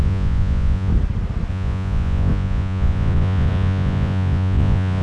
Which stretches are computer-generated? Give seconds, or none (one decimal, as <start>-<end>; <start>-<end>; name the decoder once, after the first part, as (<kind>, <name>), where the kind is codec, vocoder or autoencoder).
0.0-0.9 (vocoder, Vocos); 1.5-5.0